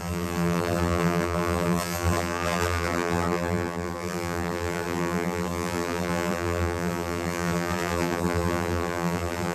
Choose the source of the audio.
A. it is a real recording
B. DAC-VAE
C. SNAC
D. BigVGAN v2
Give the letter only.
D